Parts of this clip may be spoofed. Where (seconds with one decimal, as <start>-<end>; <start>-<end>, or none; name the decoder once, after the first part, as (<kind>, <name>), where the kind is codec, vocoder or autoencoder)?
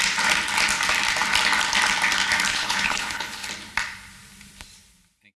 2.5-3.5 (codec, HILCodec)